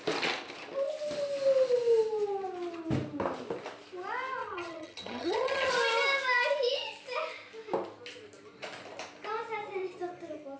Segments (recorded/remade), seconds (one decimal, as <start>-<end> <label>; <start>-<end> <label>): 0.0-4.4 recorded; 4.4-5.7 remade; 5.7-10.6 recorded